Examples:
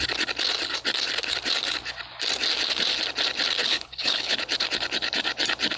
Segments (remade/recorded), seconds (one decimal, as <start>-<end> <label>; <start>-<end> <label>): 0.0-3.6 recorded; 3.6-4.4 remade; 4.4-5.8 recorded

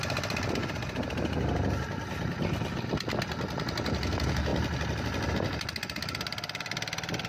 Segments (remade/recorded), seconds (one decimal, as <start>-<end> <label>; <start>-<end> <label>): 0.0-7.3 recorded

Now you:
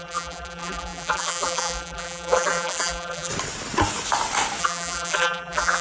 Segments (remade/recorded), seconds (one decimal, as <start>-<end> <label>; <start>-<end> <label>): 0.0-3.3 remade; 3.3-4.6 recorded; 4.6-5.8 remade